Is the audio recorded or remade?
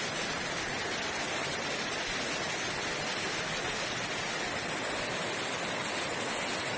recorded